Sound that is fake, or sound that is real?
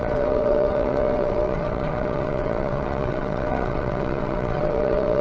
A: fake